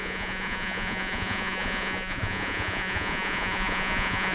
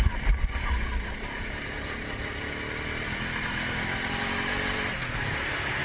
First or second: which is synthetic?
first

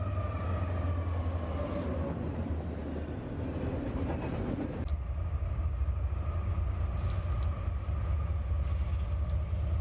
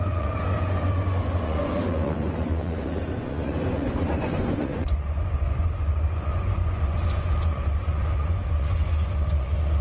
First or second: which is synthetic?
second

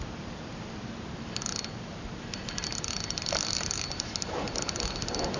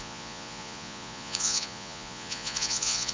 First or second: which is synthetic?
second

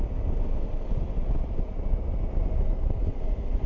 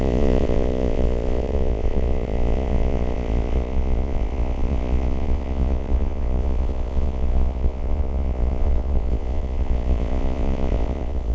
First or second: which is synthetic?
second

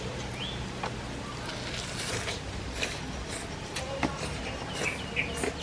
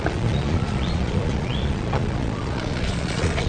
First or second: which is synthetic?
second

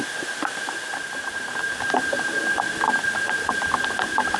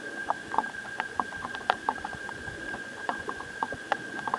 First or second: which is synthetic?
second